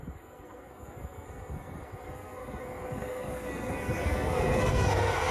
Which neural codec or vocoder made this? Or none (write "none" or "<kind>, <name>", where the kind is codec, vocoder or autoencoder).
codec, SNAC